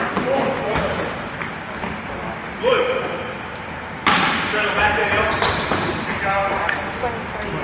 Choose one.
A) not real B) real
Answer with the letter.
B